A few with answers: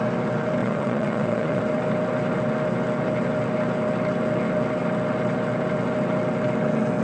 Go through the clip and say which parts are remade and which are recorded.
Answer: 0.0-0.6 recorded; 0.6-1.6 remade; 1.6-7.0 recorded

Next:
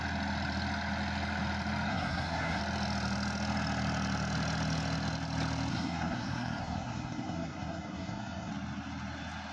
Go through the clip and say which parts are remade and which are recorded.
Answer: 0.0-1.9 recorded; 1.9-2.6 remade; 2.6-5.7 recorded; 5.7-8.5 remade; 8.5-9.5 recorded